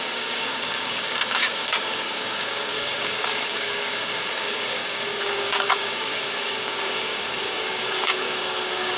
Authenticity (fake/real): fake